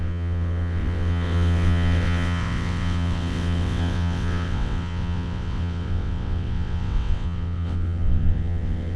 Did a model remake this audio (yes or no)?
yes